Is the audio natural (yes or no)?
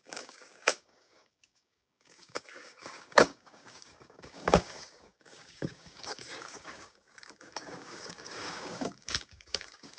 no